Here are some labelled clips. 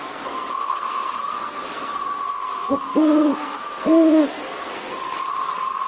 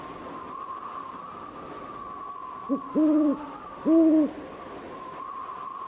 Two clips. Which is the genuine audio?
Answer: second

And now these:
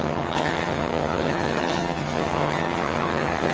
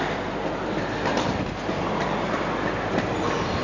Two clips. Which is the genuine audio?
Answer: second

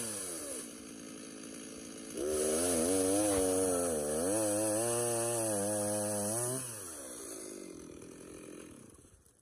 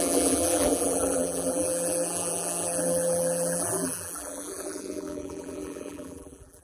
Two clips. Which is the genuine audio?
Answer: first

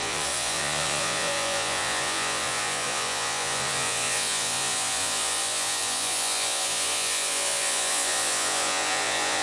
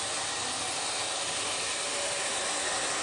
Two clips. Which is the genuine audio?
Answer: second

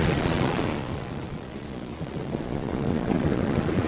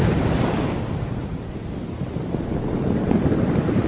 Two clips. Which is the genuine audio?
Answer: second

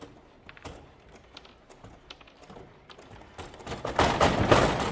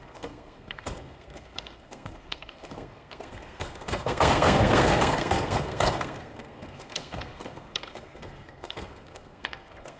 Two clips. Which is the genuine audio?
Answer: first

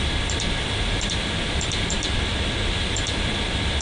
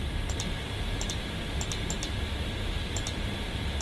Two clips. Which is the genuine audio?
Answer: second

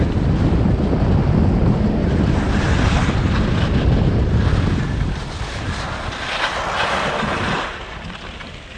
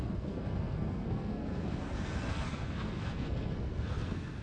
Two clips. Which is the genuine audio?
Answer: first